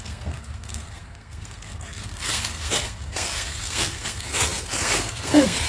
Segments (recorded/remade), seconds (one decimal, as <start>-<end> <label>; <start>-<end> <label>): 0.0-5.7 remade